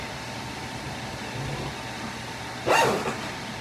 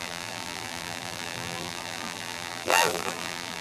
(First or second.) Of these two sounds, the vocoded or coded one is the second